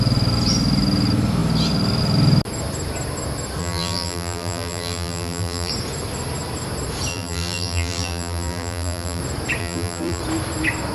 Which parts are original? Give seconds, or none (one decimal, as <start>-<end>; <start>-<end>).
0.0-3.6; 5.7-7.1; 9.2-9.6; 10.2-10.9